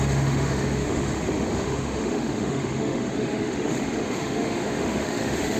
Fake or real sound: fake